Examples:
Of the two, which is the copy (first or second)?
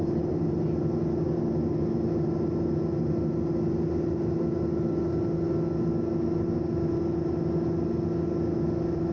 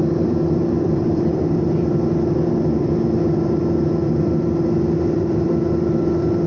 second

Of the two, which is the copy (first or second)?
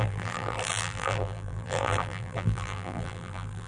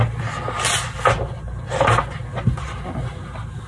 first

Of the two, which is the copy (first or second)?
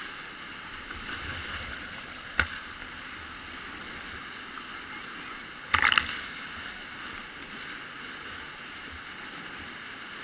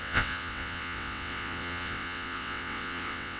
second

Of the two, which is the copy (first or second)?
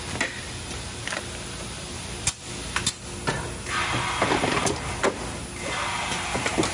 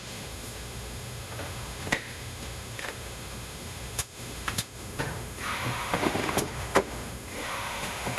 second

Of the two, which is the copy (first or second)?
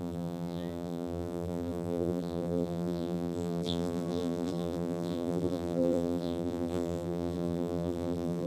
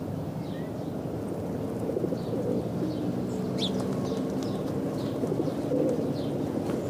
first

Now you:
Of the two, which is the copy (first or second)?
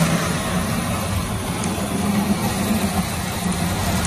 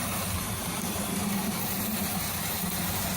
second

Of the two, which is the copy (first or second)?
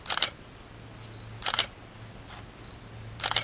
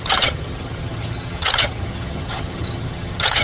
second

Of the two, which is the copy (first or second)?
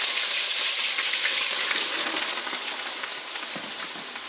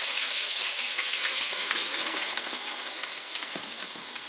second